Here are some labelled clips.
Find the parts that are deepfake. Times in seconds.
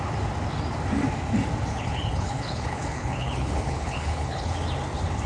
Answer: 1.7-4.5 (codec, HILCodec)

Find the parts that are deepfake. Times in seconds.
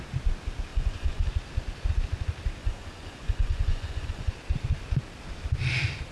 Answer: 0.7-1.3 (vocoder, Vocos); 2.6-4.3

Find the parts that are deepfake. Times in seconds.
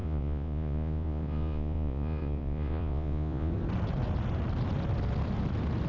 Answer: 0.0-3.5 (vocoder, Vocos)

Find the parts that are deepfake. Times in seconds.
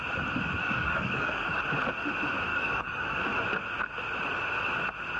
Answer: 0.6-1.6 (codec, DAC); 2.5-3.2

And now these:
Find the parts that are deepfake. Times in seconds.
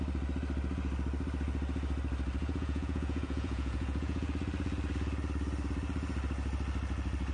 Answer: 2.4-4.3 (vocoder, Vocos)